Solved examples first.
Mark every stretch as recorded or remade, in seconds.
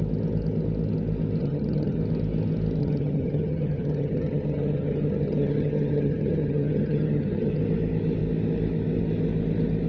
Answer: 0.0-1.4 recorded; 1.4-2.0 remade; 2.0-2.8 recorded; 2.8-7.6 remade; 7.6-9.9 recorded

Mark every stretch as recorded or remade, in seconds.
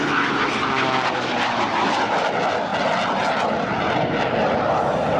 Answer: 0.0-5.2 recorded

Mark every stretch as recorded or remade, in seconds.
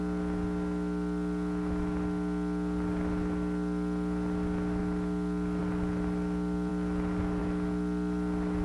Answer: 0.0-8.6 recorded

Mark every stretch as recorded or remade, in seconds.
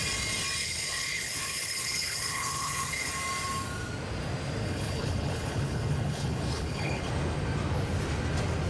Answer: 0.0-0.6 recorded; 0.6-3.1 remade; 3.1-4.6 recorded; 4.6-7.1 remade; 7.1-8.7 recorded